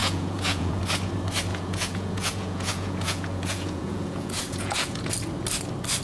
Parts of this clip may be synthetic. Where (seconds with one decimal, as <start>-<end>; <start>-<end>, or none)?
0.0-0.8; 1.5-5.1